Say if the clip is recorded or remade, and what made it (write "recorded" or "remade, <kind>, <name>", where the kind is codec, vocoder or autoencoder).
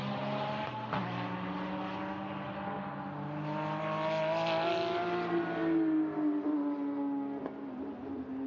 recorded